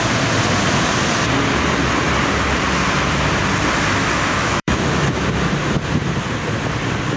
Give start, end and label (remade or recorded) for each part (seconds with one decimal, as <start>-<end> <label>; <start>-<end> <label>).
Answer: 0.0-4.3 recorded; 4.3-5.2 remade; 5.2-7.2 recorded